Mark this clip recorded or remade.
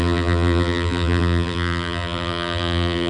remade